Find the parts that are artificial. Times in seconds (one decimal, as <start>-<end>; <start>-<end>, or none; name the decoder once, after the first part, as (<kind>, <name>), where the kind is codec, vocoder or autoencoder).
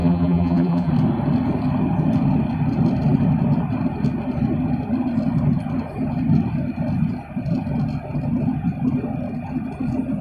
0.0-0.9 (vocoder, BigVGAN v2)